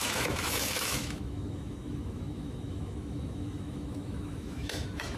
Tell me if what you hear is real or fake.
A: fake